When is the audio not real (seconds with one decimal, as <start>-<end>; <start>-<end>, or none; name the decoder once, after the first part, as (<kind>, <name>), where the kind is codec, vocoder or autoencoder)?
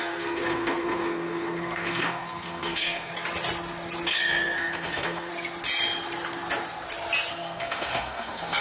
0.0-3.1 (codec, SNAC); 4.1-5.3; 7.3-8.6